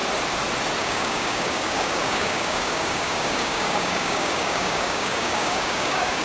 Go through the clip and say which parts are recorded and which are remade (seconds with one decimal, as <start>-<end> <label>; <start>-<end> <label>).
0.0-0.8 recorded; 0.8-6.2 remade